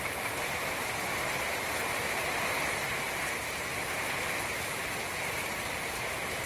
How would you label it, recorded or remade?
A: remade